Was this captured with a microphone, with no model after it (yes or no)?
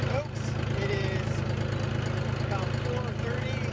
yes